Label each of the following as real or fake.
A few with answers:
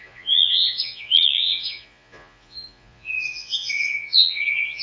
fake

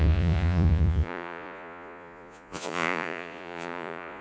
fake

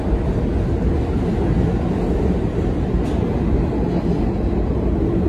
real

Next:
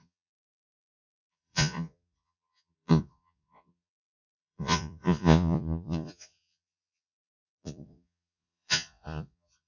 fake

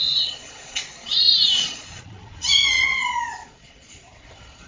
fake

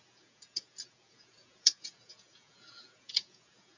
fake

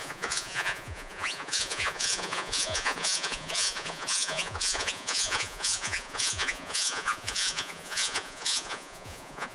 fake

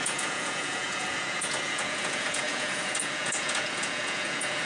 fake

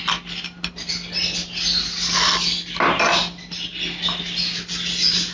real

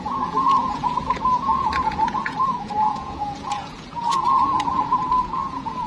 fake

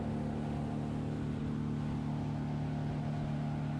real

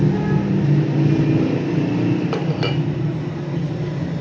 real